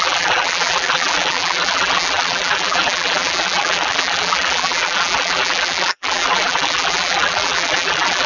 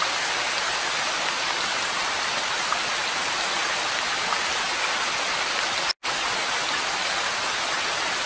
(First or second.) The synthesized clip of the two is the first